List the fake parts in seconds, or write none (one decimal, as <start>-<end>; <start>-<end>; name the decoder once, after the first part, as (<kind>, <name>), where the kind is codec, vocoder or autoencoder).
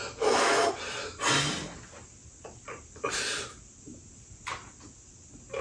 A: 0.0-0.7 (autoencoder, DAC-VAE)